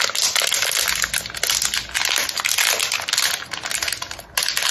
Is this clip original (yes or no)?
yes